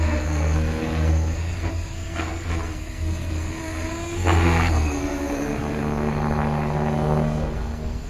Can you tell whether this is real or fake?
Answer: fake